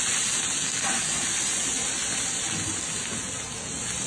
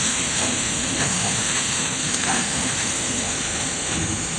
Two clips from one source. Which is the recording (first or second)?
first